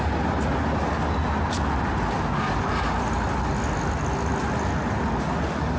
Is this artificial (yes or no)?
no